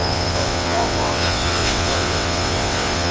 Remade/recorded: remade